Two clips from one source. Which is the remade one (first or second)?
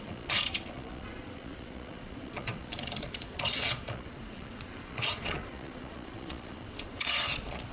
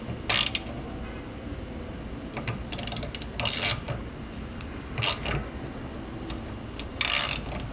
first